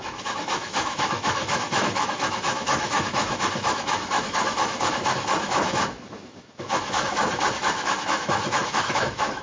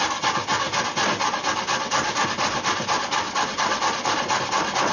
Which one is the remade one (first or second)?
first